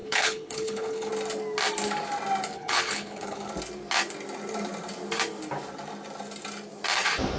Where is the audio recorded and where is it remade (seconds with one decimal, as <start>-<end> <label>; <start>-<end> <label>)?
0.0-1.1 remade; 1.1-2.5 recorded; 2.5-3.5 remade; 3.5-7.4 recorded